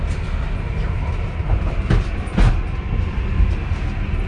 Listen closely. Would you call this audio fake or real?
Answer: real